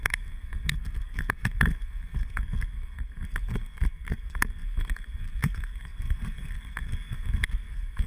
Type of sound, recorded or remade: remade